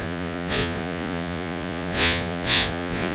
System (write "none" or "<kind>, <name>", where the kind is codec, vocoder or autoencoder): vocoder, Vocos